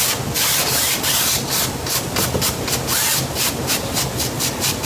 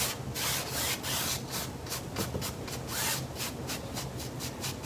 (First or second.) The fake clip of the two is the first